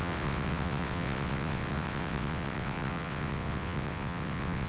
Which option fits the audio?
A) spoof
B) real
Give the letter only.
A